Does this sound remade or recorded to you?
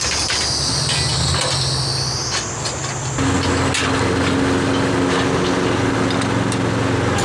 recorded